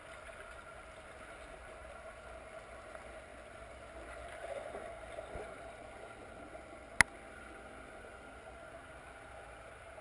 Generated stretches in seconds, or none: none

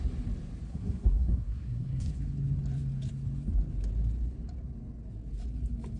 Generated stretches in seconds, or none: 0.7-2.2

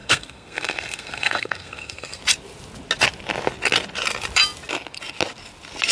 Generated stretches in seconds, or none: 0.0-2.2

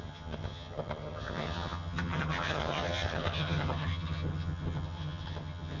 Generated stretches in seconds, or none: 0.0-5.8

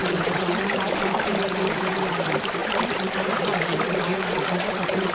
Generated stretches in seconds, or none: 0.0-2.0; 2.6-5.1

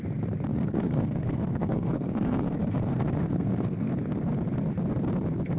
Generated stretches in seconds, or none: 0.5-3.9

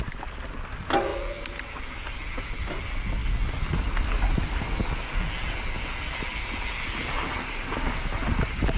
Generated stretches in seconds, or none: none